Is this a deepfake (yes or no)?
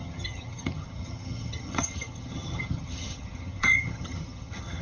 yes